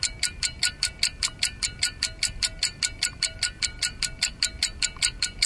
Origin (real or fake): real